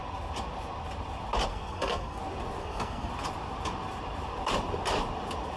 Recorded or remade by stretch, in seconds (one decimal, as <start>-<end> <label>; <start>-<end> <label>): 0.0-1.5 recorded; 1.5-2.2 remade; 2.2-2.6 recorded; 2.6-3.1 remade; 3.1-5.6 recorded

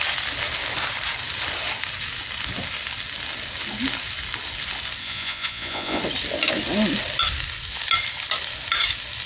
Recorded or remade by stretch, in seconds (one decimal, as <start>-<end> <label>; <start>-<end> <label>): 0.0-5.0 recorded; 5.0-6.0 remade; 6.0-9.3 recorded